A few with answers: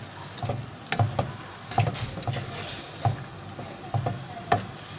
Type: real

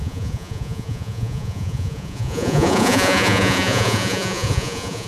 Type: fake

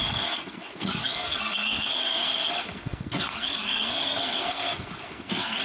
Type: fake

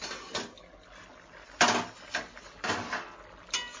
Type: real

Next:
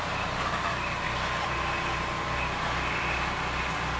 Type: real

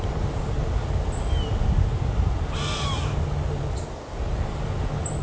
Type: real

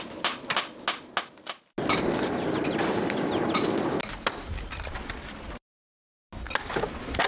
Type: real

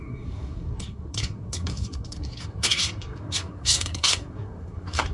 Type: fake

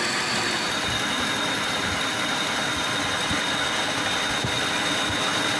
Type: real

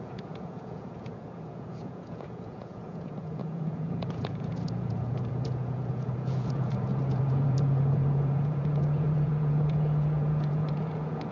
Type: fake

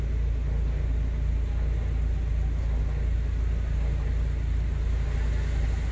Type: real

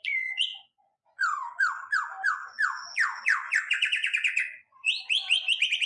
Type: fake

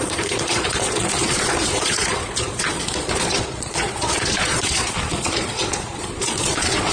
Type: fake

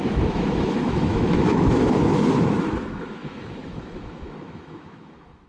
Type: fake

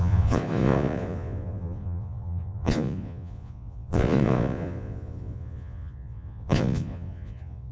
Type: fake